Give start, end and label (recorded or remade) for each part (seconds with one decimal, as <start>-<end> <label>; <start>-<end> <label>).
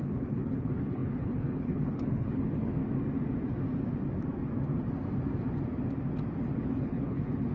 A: 0.0-2.8 remade; 2.8-6.6 recorded; 6.6-7.5 remade